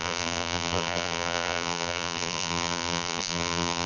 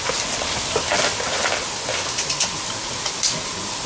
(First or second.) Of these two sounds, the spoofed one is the first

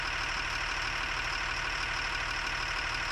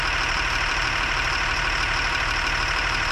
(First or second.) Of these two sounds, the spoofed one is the second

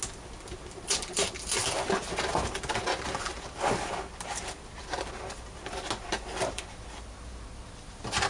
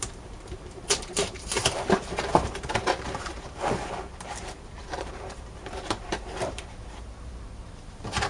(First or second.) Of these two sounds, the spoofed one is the second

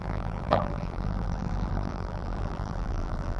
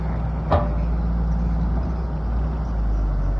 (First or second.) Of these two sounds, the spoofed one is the first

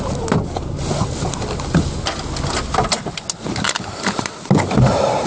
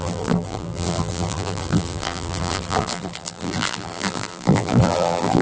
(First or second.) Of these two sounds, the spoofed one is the second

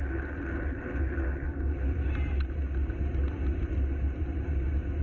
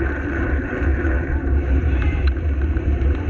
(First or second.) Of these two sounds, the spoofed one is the second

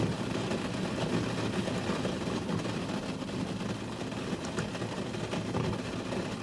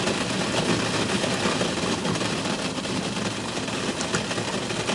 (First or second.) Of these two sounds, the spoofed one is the second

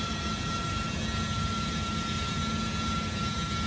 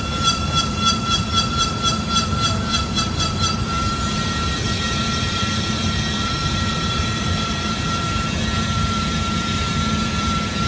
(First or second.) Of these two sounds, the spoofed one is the second